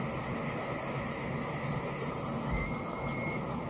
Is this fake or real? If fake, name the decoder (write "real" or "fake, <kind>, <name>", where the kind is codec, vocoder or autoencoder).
real